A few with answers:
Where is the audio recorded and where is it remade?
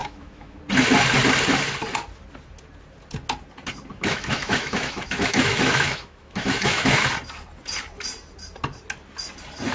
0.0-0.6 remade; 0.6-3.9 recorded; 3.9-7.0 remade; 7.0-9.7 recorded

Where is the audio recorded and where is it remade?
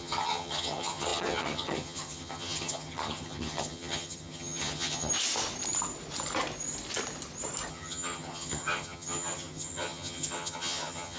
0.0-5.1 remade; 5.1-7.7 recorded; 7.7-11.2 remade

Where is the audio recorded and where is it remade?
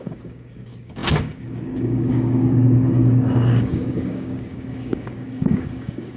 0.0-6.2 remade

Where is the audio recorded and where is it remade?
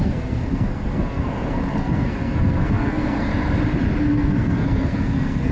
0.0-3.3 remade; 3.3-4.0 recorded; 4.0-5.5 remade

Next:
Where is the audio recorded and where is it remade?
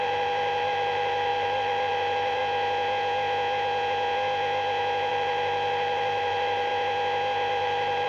0.0-2.4 remade; 2.4-5.1 recorded; 5.1-6.7 remade; 6.7-7.5 recorded; 7.5-8.1 remade